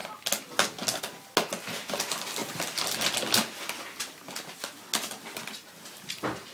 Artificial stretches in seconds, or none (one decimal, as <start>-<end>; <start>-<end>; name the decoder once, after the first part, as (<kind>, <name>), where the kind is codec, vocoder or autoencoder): none